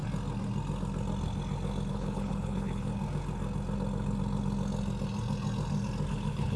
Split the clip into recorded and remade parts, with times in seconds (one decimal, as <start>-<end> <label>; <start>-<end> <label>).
0.0-1.9 recorded; 1.9-2.9 remade; 2.9-6.1 recorded; 6.1-6.6 remade